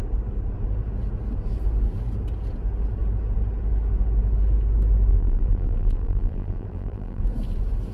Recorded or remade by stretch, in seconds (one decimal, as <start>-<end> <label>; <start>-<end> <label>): 0.0-5.1 recorded; 5.1-7.2 remade; 7.2-7.9 recorded